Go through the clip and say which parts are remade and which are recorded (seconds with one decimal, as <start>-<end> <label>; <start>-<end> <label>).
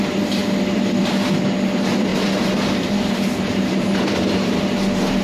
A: 0.0-2.1 recorded; 2.1-4.5 remade; 4.5-5.2 recorded